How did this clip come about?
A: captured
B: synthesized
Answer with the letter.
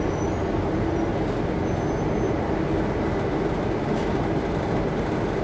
A